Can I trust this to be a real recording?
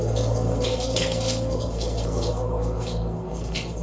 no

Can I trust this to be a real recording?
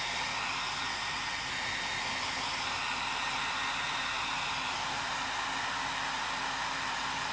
no